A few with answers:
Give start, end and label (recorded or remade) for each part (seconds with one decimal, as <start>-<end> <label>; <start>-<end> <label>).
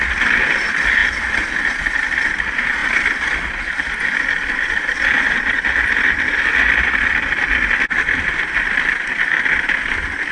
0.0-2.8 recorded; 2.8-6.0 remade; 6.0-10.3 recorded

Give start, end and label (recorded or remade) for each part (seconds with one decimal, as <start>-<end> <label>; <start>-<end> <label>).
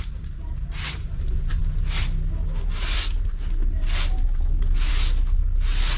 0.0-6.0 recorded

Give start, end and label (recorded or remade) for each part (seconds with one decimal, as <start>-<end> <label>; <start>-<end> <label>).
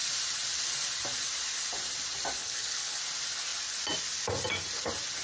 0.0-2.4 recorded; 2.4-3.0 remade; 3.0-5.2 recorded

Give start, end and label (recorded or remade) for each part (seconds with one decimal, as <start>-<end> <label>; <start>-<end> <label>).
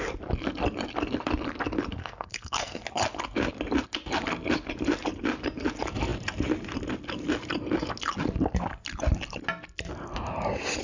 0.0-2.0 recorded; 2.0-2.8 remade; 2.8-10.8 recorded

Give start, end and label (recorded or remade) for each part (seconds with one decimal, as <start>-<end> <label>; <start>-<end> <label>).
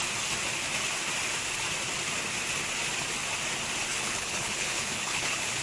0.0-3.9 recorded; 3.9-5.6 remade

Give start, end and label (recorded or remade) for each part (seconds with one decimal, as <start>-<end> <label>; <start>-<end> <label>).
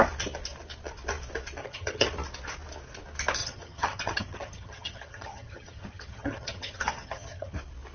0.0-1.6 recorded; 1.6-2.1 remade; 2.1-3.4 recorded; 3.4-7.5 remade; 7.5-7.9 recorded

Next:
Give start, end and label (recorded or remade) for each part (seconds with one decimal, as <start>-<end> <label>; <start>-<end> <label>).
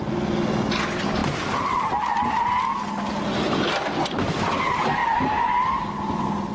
0.0-6.5 recorded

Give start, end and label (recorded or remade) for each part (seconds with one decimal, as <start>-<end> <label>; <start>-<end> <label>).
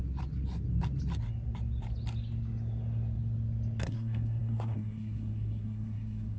0.0-3.8 recorded; 3.8-6.4 remade